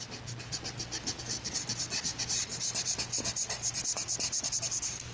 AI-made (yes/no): no